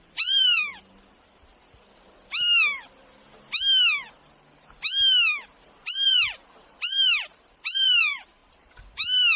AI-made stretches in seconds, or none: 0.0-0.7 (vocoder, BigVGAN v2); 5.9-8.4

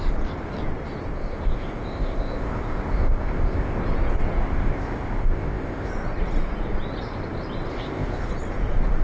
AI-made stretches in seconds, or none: 1.1-3.8 (codec, ZipCodec); 4.4-5.9; 7.7-8.3

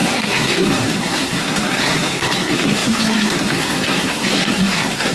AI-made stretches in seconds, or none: 0.0-5.1 (codec, SNAC)